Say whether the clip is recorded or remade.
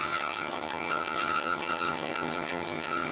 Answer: remade